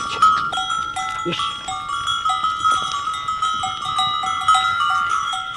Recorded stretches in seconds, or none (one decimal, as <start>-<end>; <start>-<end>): 0.0-4.7